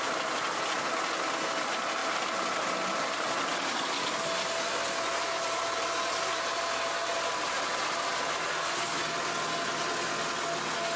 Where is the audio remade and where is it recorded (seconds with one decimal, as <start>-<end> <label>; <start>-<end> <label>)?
0.0-11.0 recorded

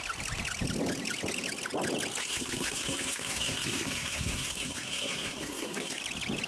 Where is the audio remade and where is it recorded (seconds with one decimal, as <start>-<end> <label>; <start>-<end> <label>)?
0.0-2.2 recorded; 2.2-6.0 remade; 6.0-6.5 recorded